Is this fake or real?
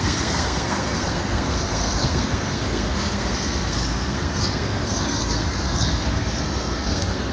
fake